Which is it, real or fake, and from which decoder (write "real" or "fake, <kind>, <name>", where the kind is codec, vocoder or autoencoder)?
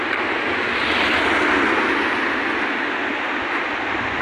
real